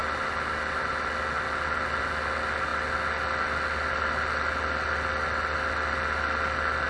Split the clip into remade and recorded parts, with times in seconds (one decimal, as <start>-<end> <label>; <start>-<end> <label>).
0.0-6.9 recorded